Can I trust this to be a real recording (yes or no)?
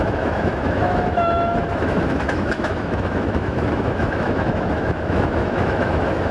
no